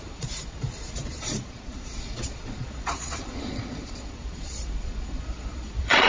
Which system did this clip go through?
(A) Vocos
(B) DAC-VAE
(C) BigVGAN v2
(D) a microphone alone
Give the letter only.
A